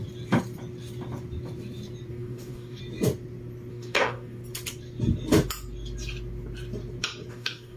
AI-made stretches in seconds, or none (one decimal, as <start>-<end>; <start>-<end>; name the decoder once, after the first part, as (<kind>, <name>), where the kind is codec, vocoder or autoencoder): 2.1-2.8 (codec, DAC); 3.7-4.4; 7.3-7.8